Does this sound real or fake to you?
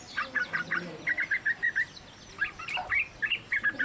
real